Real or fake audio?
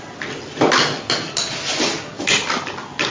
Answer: real